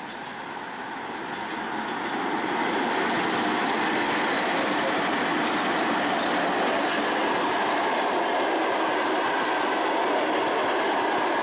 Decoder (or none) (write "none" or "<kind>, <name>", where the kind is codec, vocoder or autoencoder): none